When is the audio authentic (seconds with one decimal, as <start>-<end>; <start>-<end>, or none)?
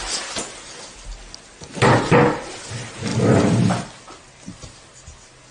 0.0-5.5